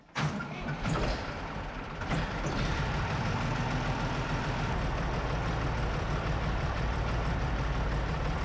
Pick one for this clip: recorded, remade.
remade